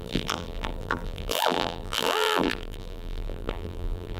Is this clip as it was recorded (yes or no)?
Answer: no